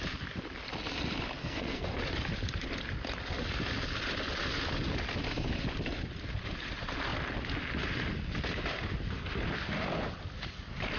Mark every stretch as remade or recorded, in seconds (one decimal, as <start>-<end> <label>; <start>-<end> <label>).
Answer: 0.0-1.4 recorded; 1.4-2.0 remade; 2.0-11.0 recorded